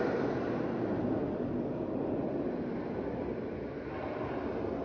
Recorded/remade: recorded